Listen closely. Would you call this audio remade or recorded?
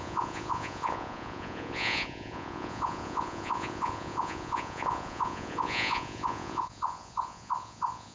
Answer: remade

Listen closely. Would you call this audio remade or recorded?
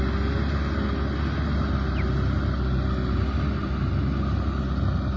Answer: recorded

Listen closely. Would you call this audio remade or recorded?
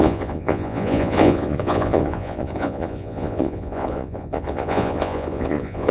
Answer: remade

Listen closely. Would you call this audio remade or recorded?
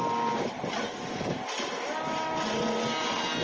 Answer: recorded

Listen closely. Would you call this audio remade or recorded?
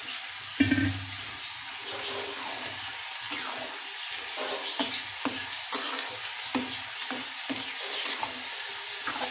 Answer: recorded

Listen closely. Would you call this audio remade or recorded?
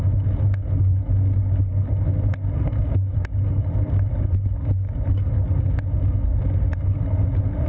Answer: recorded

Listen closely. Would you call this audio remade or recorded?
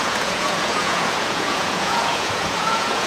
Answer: remade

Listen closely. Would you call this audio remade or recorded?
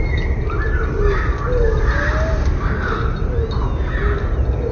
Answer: recorded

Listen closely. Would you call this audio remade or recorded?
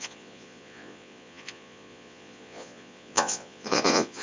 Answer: remade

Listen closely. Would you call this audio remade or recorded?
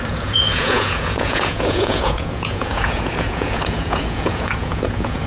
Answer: remade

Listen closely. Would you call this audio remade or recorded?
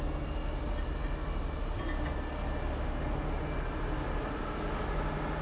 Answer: recorded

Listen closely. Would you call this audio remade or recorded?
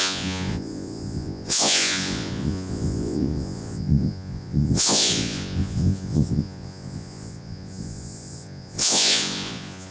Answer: remade